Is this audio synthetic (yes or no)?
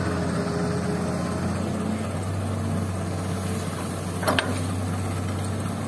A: no